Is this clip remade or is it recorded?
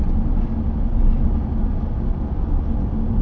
recorded